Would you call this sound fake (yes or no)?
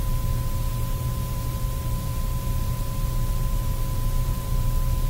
yes